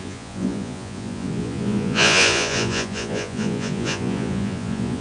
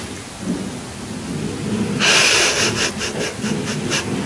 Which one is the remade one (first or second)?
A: first